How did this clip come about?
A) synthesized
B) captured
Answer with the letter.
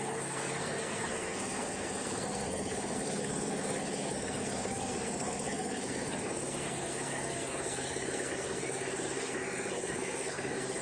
A